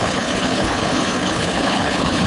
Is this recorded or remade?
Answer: remade